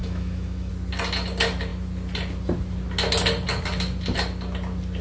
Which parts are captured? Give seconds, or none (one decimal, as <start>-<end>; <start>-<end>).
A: 0.7-5.0